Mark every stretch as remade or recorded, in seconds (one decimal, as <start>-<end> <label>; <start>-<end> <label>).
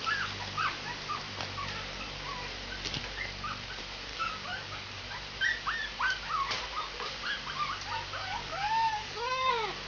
0.0-4.1 recorded; 4.1-5.0 remade; 5.0-8.2 recorded; 8.2-9.5 remade; 9.5-9.9 recorded